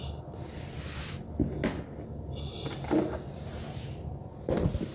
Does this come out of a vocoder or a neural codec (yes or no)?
no